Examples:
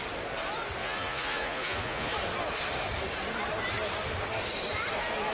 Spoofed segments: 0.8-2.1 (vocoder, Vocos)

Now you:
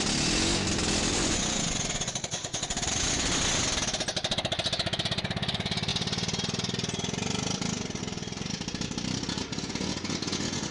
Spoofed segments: 1.1-3.3 (vocoder, Vocos); 9.4-10.7

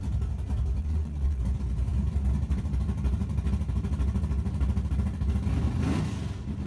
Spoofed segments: 0.8-1.4 (vocoder, Vocos)

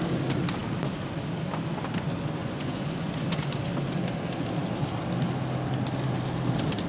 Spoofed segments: 2.4-3.6 (vocoder, Vocos)

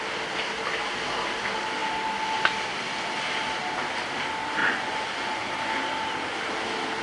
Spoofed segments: 4.6-5.5 (vocoder, Vocos)

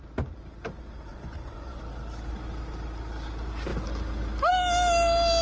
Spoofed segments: 1.1-1.8 (vocoder, Vocos)